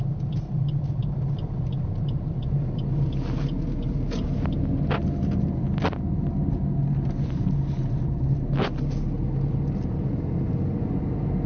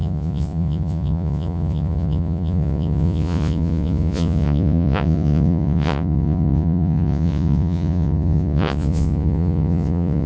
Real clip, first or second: first